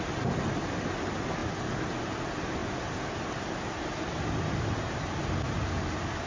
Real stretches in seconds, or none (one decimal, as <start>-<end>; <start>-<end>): 0.0-6.3